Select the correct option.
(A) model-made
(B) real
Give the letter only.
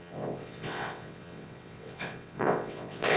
A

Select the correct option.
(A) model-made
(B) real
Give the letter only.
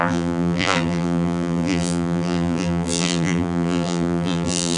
A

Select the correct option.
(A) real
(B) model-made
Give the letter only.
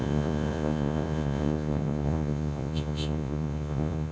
B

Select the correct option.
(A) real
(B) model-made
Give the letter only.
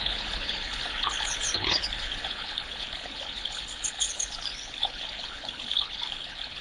B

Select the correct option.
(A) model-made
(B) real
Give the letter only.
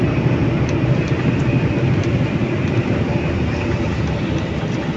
B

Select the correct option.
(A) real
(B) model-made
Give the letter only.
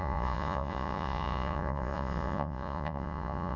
B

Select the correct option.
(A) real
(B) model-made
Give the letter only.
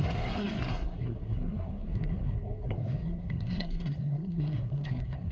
B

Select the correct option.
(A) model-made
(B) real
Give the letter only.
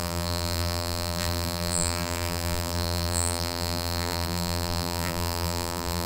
A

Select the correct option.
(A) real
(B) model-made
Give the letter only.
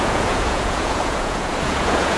B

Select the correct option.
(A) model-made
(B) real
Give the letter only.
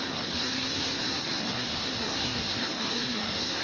A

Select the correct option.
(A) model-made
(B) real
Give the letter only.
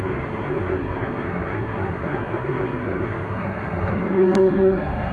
A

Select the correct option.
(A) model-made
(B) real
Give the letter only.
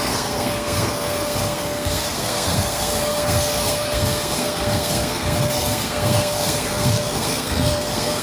A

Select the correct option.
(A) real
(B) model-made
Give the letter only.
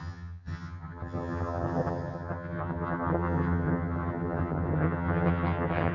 B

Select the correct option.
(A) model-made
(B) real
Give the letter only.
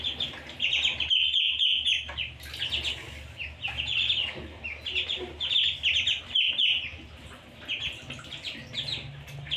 B